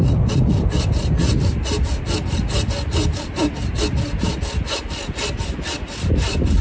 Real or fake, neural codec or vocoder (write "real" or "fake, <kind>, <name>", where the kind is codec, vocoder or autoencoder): real